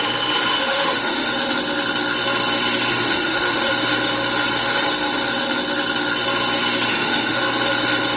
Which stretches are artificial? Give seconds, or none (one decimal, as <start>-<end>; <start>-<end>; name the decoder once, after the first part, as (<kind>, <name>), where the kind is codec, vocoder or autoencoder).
0.5-1.3 (autoencoder, DAC-VAE); 2.9-3.7; 6.9-7.4